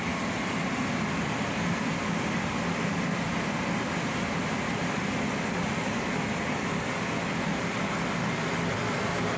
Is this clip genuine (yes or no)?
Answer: yes